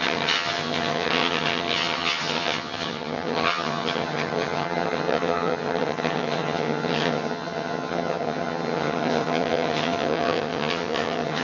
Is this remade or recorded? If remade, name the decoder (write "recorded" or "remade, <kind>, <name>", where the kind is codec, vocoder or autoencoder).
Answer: remade, vocoder, HiFi-GAN